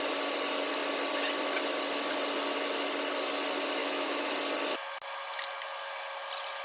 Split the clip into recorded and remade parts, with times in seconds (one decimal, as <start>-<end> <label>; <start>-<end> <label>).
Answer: 0.0-3.8 recorded; 3.8-4.3 remade; 4.3-6.6 recorded